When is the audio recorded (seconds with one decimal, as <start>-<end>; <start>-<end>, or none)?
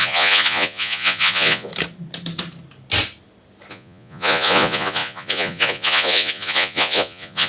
1.7-3.7